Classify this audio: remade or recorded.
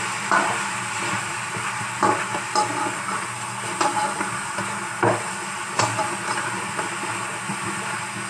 recorded